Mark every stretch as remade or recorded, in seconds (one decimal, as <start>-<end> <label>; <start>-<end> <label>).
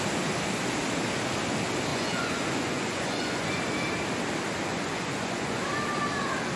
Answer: 0.0-1.9 recorded; 1.9-3.6 remade; 3.6-4.7 recorded; 4.7-5.6 remade; 5.6-6.6 recorded